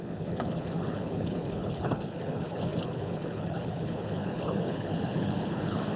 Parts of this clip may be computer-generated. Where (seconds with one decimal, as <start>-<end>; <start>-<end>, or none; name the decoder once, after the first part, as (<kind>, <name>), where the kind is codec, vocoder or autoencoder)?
0.0-6.0 (codec, HILCodec)